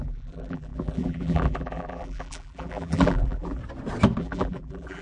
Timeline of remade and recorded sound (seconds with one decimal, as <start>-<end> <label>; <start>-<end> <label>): 0.0-3.6 remade; 3.6-4.2 recorded; 4.2-5.0 remade